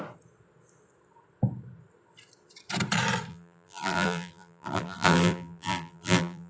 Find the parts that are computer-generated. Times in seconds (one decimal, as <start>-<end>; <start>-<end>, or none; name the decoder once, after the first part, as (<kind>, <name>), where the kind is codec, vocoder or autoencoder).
3.3-6.5 (vocoder, BigVGAN v2)